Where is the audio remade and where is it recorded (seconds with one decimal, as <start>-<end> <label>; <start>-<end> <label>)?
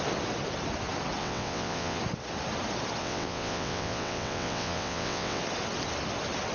0.0-1.2 recorded; 1.2-2.0 remade; 2.0-3.0 recorded; 3.0-5.4 remade; 5.4-6.5 recorded